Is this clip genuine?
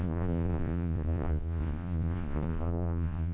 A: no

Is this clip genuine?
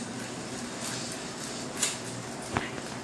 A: yes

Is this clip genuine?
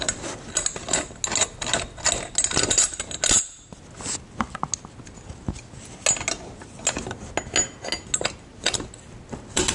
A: yes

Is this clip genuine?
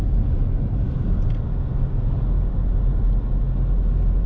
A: yes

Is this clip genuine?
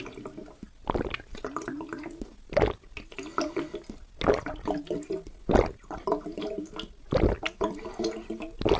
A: yes